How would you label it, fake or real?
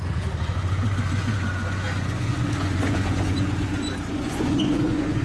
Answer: fake